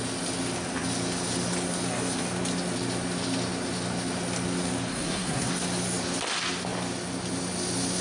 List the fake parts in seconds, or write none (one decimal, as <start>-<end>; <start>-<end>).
4.9-5.5